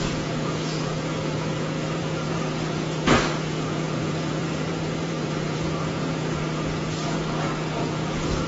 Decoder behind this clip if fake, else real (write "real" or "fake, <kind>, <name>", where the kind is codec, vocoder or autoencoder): fake, vocoder, Vocos